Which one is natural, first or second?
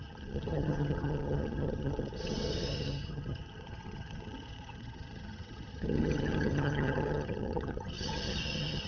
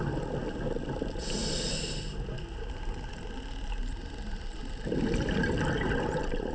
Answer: second